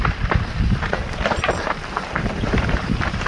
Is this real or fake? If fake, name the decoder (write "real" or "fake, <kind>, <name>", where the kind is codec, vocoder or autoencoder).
fake, vocoder, BigVGAN v2